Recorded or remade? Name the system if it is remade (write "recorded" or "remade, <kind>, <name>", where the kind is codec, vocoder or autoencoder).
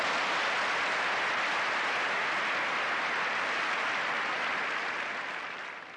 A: recorded